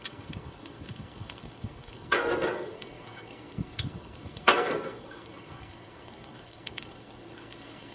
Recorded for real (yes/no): no